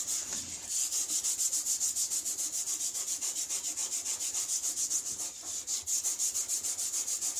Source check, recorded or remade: recorded